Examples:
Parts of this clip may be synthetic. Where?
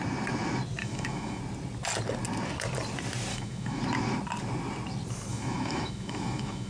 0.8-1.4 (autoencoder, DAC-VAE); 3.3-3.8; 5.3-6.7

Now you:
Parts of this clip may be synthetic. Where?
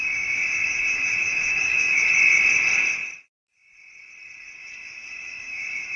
0.0-2.0 (autoencoder, DAC-VAE); 4.6-6.0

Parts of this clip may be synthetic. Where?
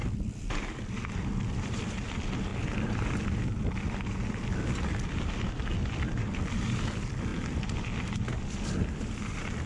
0.0-2.5 (vocoder, BigVGAN v2); 6.1-9.7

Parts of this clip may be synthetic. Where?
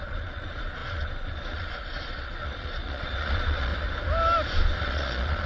0.0-3.7 (vocoder, Vocos); 4.8-5.5